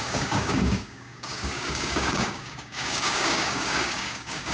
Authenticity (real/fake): fake